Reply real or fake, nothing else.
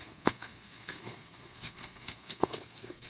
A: fake